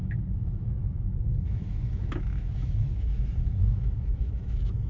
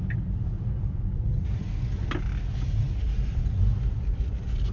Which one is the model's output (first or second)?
first